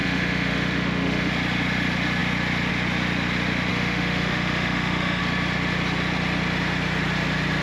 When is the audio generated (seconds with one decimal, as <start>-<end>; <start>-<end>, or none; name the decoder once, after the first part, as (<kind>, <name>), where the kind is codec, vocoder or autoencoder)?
0.0-1.3 (autoencoder, DAC-VAE); 3.7-5.2